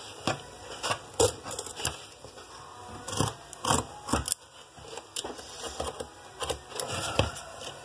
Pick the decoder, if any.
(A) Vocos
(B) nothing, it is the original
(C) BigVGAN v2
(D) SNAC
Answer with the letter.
B